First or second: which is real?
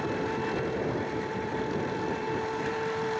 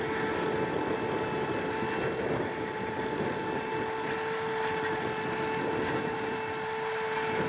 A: second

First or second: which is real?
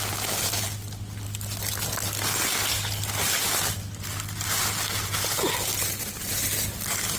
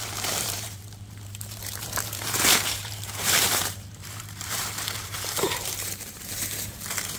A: first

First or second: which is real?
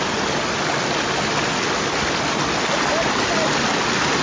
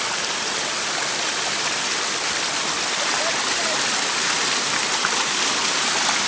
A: first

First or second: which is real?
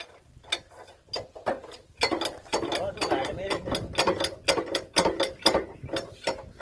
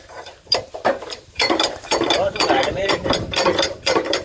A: first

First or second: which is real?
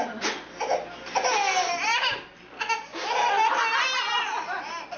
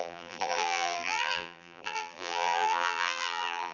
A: first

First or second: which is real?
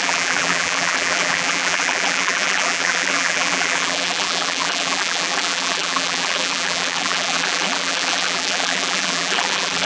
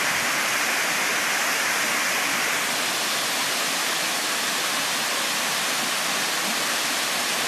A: second